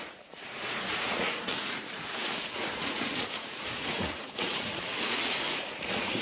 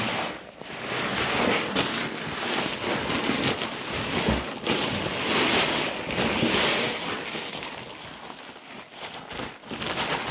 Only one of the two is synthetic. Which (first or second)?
first